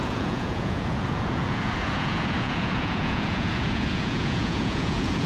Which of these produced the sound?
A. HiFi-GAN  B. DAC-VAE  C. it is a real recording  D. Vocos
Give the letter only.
D